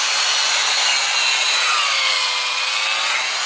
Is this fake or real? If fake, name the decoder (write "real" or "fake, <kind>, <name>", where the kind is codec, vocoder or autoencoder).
real